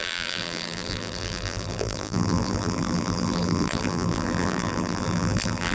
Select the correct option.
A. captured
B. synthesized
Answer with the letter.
B